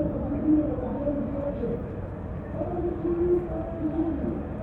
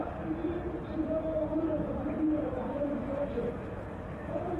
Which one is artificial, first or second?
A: second